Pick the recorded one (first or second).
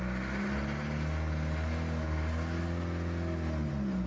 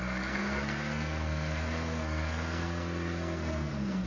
first